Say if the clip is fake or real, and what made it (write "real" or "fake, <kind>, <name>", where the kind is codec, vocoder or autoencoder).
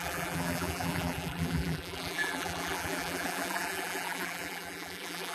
fake, vocoder, BigVGAN v2